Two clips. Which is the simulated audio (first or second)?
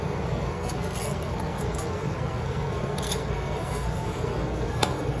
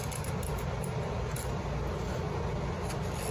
first